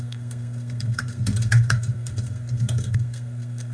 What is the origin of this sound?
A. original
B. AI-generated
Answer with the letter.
B